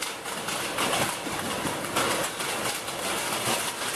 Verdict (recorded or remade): recorded